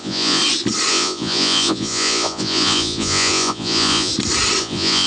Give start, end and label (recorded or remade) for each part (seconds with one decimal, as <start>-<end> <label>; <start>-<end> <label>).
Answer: 0.0-0.4 remade; 0.4-0.9 recorded; 0.9-4.1 remade; 4.1-4.6 recorded; 4.6-5.1 remade